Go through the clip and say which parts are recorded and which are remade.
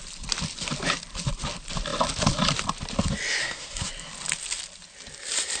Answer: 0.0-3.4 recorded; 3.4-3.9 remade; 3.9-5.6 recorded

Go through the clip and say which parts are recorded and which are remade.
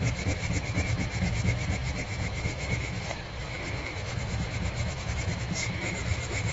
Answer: 0.0-6.5 remade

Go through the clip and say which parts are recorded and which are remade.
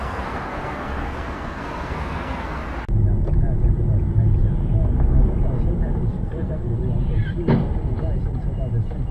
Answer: 0.0-2.6 remade; 2.6-6.1 recorded; 6.1-6.7 remade; 6.7-9.1 recorded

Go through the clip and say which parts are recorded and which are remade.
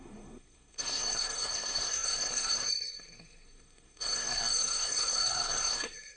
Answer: 0.0-6.2 remade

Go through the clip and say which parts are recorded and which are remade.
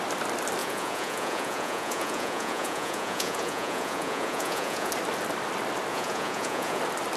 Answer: 0.0-0.6 recorded; 0.6-4.9 remade; 4.9-5.9 recorded; 5.9-6.8 remade; 6.8-7.2 recorded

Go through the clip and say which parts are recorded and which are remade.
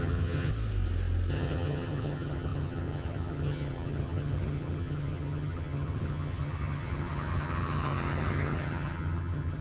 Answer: 0.0-0.5 remade; 0.5-1.3 recorded; 1.3-9.6 remade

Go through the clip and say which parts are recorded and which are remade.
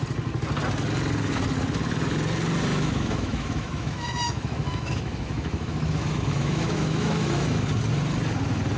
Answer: 0.0-2.7 recorded; 2.7-7.4 remade; 7.4-8.8 recorded